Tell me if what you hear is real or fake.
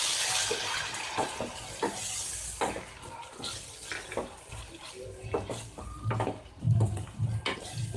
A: real